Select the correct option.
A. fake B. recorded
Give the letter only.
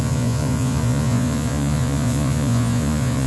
A